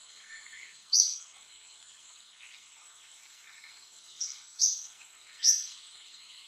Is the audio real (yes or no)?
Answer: no